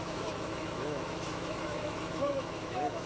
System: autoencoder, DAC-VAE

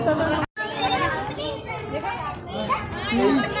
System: none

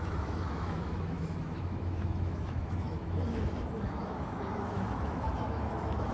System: autoencoder, DAC-VAE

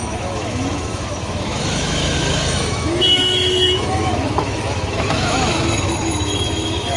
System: autoencoder, DAC-VAE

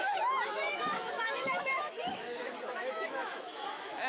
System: autoencoder, DAC-VAE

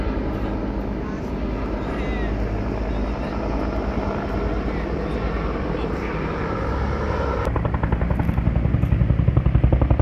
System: none